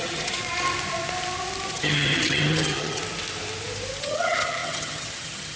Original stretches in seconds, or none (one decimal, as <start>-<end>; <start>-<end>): 0.4-1.7; 3.0-4.0